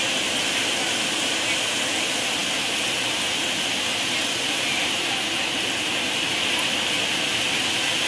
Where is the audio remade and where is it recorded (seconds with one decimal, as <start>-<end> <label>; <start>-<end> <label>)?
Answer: 0.0-8.1 recorded